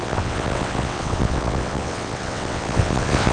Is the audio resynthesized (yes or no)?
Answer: yes